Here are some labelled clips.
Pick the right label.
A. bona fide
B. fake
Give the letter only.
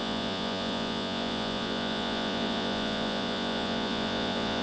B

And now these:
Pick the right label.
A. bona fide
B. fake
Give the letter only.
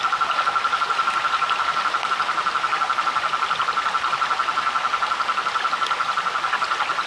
A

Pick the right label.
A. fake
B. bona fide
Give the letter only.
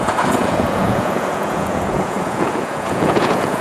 A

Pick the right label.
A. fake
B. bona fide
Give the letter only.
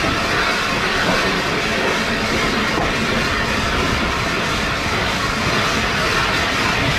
B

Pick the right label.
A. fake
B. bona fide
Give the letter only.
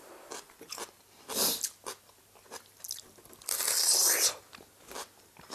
B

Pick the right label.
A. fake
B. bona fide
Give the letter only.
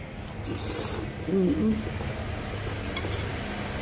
B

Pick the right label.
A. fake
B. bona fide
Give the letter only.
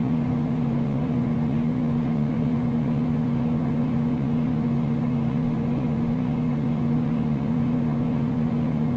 A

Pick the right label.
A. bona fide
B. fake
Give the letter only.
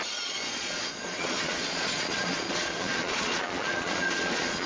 B